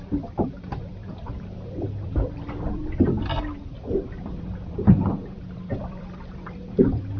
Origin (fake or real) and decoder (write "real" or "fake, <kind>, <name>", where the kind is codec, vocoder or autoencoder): fake, vocoder, BigVGAN v2